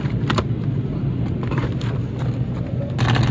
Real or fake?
real